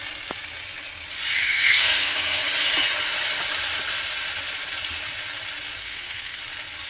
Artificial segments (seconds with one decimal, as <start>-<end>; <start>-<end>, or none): 1.4-2.4; 5.8-6.4